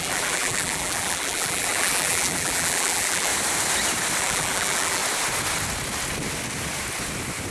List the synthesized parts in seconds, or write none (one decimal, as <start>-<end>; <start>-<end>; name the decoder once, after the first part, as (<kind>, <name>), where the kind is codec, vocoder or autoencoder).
0.0-3.3 (vocoder, BigVGAN v2); 4.2-5.0